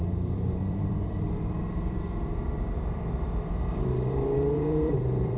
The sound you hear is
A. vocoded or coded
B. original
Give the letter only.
A